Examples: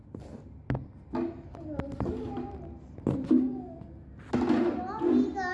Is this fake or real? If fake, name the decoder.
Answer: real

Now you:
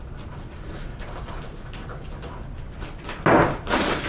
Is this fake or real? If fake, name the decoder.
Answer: real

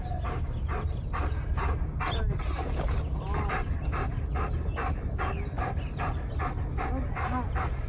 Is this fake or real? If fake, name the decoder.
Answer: real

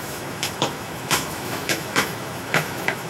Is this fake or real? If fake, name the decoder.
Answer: fake, autoencoder, DAC-VAE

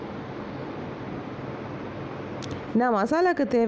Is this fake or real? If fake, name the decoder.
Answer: real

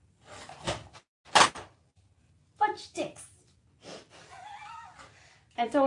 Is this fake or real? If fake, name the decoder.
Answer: real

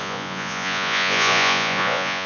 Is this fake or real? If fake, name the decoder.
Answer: fake, vocoder, Vocos